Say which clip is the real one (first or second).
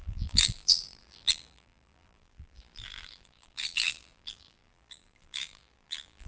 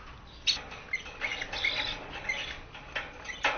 second